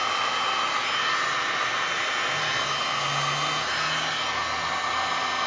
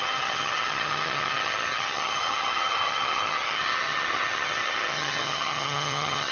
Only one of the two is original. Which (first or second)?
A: first